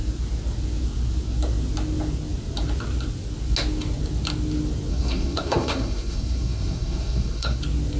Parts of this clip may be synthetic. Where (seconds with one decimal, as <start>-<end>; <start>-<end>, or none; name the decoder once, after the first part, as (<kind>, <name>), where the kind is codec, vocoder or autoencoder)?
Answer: 4.9-7.6 (codec, SNAC)